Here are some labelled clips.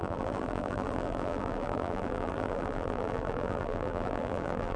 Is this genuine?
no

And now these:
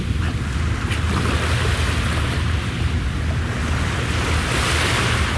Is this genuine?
yes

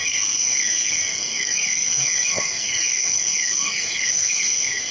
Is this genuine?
no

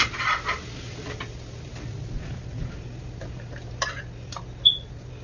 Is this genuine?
yes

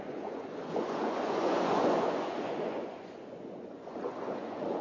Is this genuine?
no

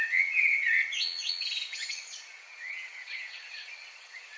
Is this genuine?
no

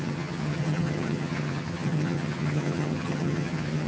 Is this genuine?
no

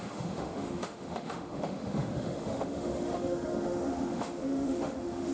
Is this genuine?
no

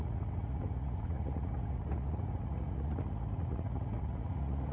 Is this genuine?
no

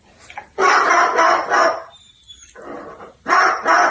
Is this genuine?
yes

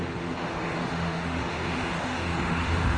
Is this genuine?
no